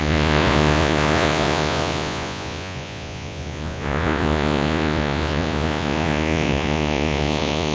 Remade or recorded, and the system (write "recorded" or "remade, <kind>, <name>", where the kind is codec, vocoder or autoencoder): remade, vocoder, Vocos